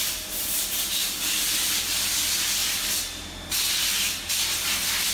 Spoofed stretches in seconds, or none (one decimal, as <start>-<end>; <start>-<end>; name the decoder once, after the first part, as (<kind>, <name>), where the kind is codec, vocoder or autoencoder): none